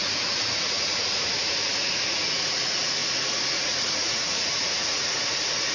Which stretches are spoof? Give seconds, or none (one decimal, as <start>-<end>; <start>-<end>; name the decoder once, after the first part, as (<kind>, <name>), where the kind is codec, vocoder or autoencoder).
0.0-5.7 (vocoder, Vocos)